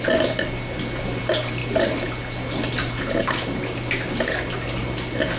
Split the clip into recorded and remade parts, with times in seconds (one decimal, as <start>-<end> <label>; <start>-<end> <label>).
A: 0.0-5.4 recorded